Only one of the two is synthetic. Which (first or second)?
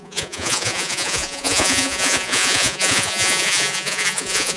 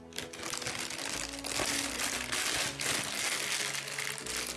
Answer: first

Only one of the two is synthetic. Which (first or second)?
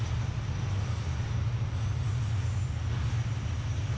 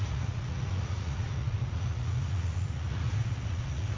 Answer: second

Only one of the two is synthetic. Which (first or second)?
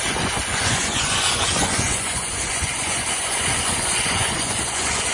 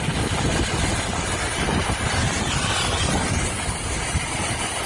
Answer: first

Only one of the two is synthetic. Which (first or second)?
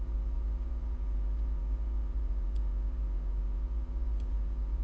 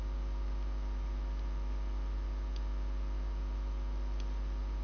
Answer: first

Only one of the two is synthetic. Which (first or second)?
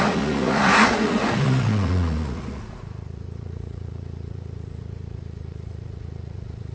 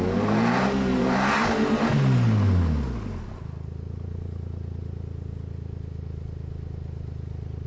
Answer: first